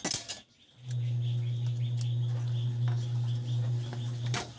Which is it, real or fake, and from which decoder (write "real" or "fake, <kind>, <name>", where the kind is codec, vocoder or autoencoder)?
real